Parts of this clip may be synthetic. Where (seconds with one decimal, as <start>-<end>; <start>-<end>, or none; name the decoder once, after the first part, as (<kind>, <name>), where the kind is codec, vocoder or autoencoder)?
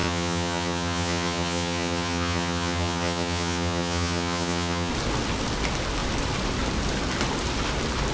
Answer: 0.0-4.9 (vocoder, HiFi-GAN)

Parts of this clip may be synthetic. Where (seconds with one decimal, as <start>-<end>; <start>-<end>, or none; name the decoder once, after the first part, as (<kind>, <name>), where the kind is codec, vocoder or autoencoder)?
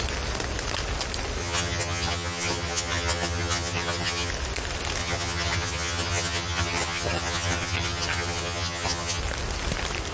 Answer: 1.4-4.3 (vocoder, HiFi-GAN); 5.0-9.2